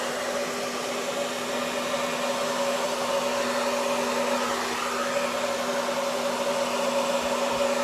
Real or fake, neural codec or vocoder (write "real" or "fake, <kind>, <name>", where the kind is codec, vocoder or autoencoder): real